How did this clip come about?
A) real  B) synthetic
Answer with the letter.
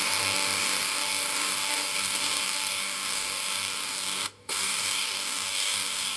B